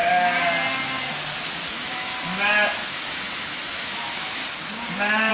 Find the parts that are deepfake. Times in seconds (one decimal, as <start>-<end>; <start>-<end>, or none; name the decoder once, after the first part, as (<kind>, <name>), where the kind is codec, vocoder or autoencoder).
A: 1.7-2.1 (autoencoder, DAC-VAE); 2.9-4.4

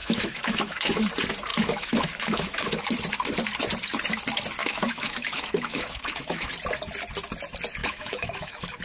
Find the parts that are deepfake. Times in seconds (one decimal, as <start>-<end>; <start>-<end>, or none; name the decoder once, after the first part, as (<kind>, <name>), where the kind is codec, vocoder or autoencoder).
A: 0.0-1.1 (autoencoder, DAC-VAE); 1.5-2.8; 4.6-6.5; 7.8-8.8

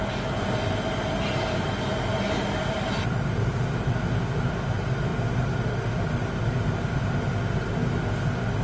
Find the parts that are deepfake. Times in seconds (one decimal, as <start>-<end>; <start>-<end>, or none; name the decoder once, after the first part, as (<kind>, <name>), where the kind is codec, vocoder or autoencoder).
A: none